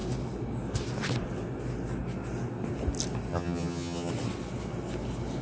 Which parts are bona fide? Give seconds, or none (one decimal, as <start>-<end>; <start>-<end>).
0.0-3.3; 4.1-5.4